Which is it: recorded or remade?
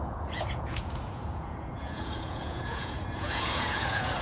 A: remade